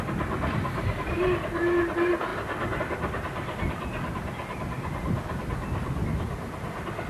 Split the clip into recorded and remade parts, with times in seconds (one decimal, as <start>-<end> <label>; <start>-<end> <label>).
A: 0.0-7.1 recorded